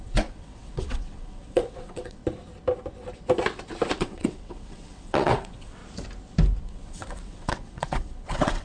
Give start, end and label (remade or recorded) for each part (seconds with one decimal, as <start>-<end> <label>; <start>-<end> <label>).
0.0-2.2 remade; 2.2-4.0 recorded; 4.0-5.8 remade; 5.8-6.6 recorded; 6.6-8.6 remade